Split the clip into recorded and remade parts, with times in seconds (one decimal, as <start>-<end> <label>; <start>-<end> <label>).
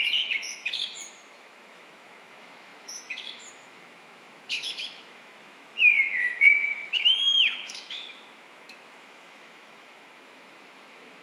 0.0-11.2 remade